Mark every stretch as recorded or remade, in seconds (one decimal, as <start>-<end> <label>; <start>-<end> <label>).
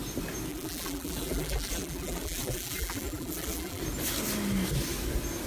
0.0-0.5 recorded; 0.5-3.8 remade; 3.8-5.5 recorded